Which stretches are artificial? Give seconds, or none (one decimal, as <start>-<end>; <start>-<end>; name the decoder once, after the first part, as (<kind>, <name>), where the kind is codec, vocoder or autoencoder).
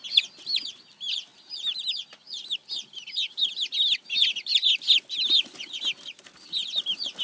none